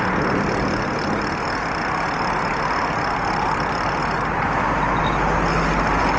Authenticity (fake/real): real